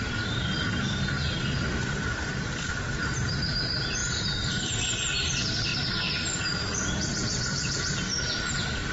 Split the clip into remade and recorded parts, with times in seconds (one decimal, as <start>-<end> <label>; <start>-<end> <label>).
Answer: 0.0-8.9 remade